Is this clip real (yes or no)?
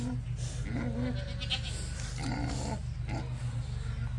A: yes